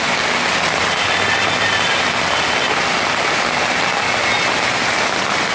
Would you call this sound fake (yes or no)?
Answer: no